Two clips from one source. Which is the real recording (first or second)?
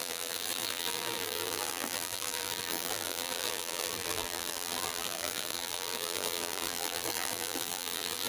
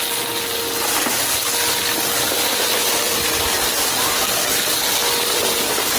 second